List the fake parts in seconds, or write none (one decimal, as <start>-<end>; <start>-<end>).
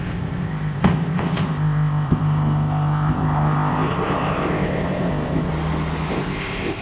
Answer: 0.0-5.5; 6.1-6.8